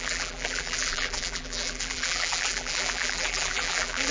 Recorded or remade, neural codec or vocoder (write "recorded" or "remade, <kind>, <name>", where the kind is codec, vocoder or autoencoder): remade, vocoder, BigVGAN v2